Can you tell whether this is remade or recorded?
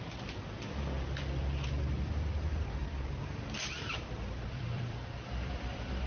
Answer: remade